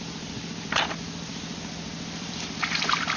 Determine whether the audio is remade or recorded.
remade